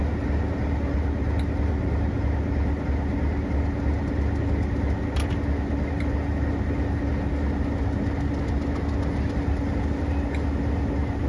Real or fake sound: real